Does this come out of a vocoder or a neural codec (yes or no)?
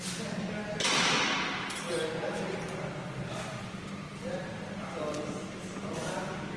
no